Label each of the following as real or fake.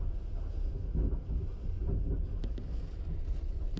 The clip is real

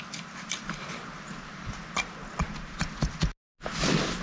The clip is real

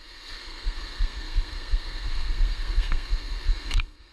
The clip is fake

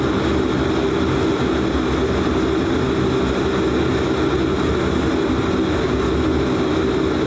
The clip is real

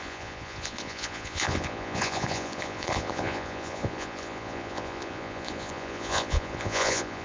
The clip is fake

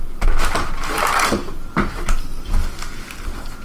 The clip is real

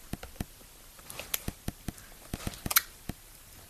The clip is real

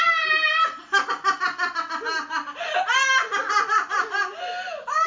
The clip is real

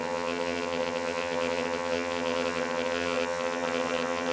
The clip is fake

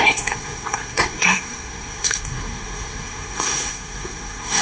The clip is fake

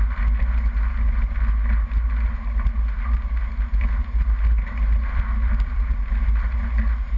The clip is real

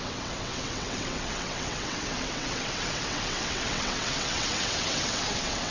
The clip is fake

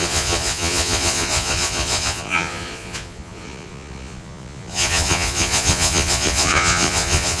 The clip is fake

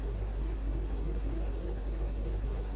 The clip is fake